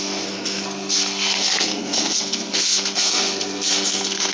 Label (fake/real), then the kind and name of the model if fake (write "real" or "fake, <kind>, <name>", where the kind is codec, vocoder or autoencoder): fake, codec, SNAC